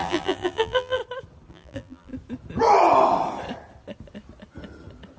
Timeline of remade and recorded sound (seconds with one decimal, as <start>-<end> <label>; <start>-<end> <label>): 0.0-1.0 remade; 1.0-1.5 recorded; 1.5-2.1 remade; 2.1-5.2 recorded